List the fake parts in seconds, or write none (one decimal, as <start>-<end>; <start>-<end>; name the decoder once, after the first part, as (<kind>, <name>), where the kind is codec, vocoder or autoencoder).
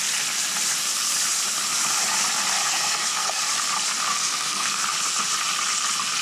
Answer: 2.6-3.4 (codec, SNAC); 4.1-4.8